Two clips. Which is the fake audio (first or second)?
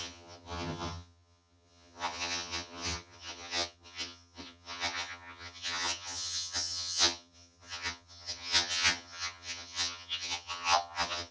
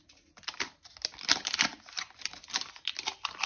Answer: first